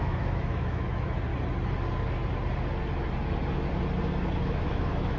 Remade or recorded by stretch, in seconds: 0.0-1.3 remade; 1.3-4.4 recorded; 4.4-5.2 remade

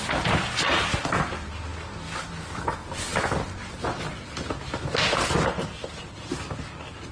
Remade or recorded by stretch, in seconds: 0.0-7.1 recorded

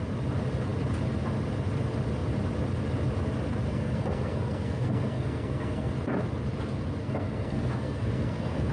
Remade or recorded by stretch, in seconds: 0.0-3.7 recorded; 3.7-5.9 remade; 5.9-7.0 recorded; 7.0-8.7 remade